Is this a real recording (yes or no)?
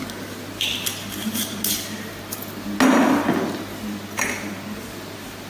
yes